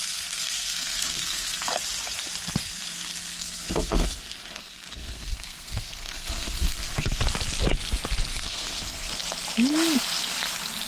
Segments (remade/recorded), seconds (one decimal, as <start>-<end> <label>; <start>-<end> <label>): 0.0-1.7 remade; 1.7-2.6 recorded; 2.6-7.2 remade; 7.2-8.3 recorded; 8.3-9.1 remade; 9.1-10.9 recorded